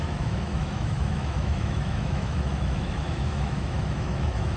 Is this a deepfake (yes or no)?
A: yes